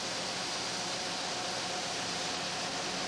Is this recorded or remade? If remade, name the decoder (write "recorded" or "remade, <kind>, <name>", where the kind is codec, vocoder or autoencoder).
recorded